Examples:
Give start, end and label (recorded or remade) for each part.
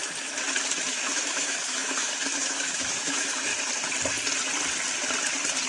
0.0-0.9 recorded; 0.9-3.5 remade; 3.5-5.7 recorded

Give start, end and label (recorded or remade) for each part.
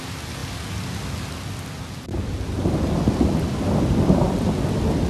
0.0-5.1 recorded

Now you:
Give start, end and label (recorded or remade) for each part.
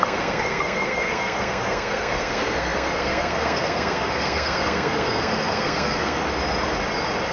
0.0-6.2 remade; 6.2-7.3 recorded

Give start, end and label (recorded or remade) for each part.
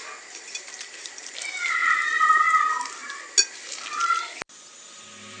0.0-0.5 recorded; 0.5-1.2 remade; 1.2-5.4 recorded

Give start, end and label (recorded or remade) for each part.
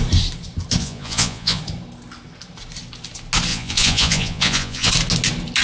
0.0-0.8 recorded; 0.8-1.6 remade; 1.6-3.5 recorded; 3.5-4.9 remade; 4.9-5.6 recorded